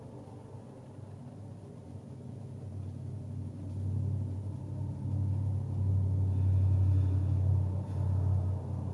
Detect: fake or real real